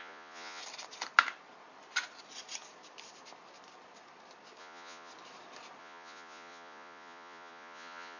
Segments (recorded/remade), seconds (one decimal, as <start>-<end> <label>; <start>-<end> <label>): 0.0-0.6 remade; 0.6-4.6 recorded; 4.6-5.1 remade; 5.1-5.8 recorded; 5.8-8.2 remade